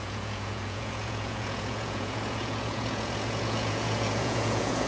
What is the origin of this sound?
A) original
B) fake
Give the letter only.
B